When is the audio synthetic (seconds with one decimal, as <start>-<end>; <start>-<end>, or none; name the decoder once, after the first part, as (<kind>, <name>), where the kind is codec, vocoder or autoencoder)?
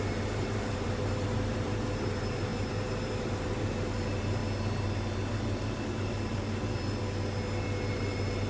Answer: 0.0-4.4 (vocoder, BigVGAN v2); 5.3-7.0; 7.9-8.5